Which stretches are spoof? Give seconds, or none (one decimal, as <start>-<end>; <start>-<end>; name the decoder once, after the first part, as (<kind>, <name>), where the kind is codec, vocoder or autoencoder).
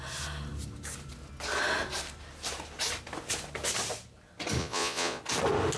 4.6-5.2 (vocoder, Vocos)